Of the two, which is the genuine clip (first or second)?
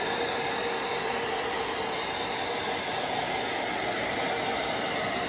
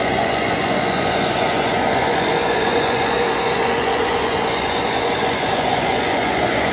first